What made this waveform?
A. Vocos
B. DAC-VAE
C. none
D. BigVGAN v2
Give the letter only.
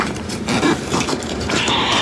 D